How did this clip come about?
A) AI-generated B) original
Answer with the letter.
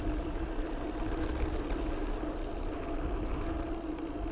B